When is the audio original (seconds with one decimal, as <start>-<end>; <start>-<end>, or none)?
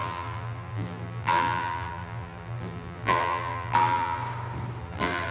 4.2-4.8